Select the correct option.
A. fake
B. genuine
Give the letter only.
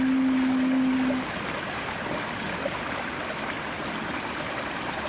B